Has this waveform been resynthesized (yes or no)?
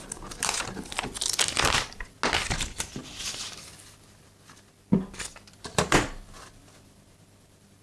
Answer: no